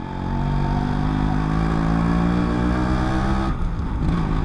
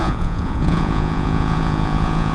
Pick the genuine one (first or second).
first